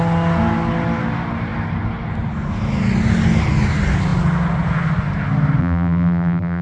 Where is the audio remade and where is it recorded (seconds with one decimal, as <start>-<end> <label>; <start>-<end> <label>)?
0.0-5.6 recorded; 5.6-6.6 remade